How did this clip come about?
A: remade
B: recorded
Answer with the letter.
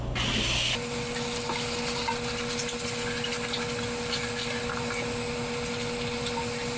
B